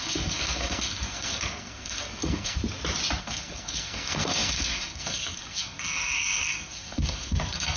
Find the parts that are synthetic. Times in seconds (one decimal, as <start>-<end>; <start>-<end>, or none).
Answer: 0.0-2.6; 3.2-7.8